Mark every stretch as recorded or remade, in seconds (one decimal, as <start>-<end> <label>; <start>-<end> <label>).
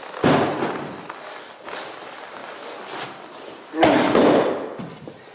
0.0-5.3 recorded